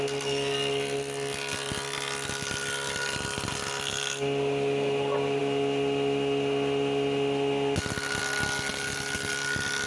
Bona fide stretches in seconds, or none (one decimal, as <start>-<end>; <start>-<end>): 0.0-9.9